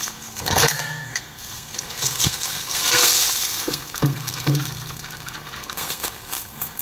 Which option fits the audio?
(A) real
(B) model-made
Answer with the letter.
B